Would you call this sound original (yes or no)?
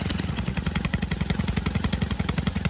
no